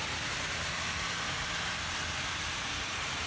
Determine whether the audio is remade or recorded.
recorded